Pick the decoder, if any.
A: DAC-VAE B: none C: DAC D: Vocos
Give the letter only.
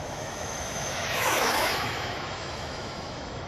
A